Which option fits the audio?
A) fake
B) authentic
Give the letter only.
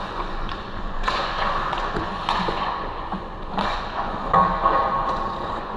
A